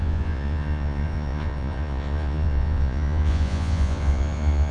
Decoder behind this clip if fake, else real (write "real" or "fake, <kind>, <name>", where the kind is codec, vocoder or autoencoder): fake, vocoder, Vocos